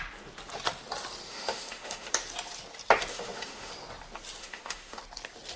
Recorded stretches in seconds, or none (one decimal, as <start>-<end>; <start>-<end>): 0.0-1.3; 2.1-3.1; 3.7-4.4; 5.0-5.6